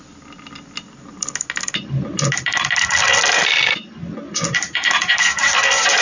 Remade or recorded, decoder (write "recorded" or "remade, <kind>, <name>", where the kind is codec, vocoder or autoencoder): recorded